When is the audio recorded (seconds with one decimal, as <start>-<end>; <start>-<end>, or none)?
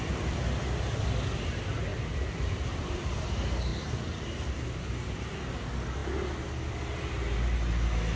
0.0-1.9; 3.1-3.7; 4.6-8.2